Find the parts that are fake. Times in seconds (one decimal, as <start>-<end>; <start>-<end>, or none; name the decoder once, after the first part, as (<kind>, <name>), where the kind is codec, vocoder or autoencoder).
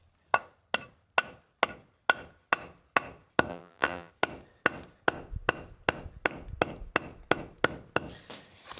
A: 3.5-4.1 (vocoder, BigVGAN v2)